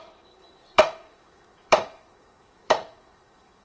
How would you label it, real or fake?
fake